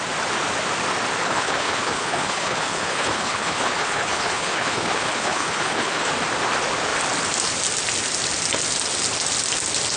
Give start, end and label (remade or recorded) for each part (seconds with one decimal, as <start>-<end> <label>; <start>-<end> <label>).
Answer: 0.0-1.2 recorded; 1.2-6.1 remade; 6.1-10.0 recorded